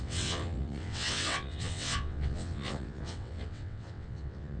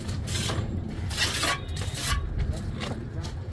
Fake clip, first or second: first